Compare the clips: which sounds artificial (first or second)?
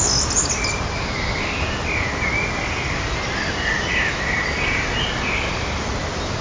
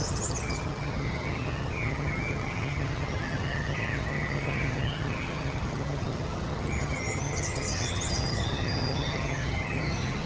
second